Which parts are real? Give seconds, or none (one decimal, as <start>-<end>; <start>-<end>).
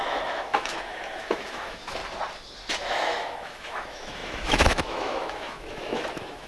2.0-2.8